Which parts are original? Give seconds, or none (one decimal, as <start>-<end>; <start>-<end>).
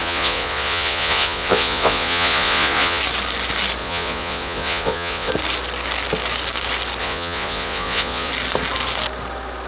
3.0-3.8; 5.3-7.0; 8.3-9.7